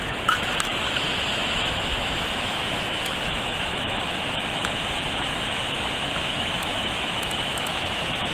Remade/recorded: remade